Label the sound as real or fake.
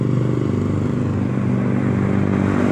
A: real